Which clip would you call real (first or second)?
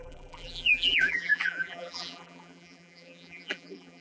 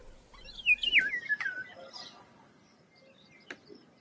second